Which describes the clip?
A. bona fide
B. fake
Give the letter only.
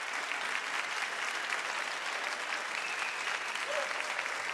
A